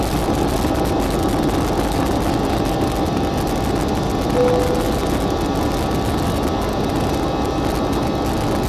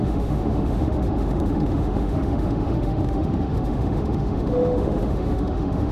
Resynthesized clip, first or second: second